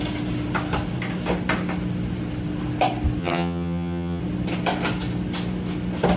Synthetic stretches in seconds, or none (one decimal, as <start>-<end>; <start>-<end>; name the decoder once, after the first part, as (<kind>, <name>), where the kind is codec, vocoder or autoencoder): 3.2-4.2 (vocoder, HiFi-GAN)